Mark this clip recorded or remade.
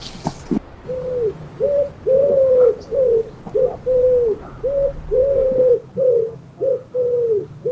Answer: recorded